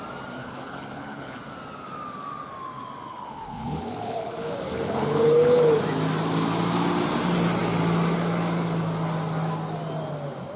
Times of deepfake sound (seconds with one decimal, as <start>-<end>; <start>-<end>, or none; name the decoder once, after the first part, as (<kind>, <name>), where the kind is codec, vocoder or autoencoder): 0.4-1.4 (codec, HILCodec); 3.1-5.8